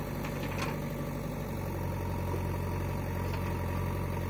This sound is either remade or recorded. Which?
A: recorded